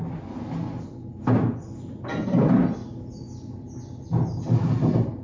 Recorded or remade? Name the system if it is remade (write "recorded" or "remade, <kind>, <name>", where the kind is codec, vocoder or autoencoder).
recorded